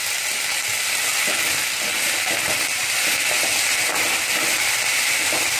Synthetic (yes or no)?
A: no